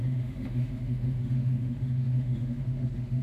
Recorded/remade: remade